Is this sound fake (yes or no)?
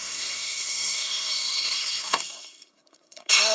yes